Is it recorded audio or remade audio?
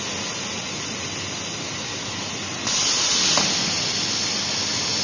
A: recorded